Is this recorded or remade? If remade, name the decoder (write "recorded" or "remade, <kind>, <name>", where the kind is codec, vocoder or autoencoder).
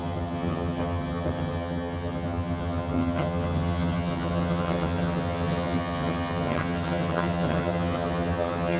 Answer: remade, vocoder, HiFi-GAN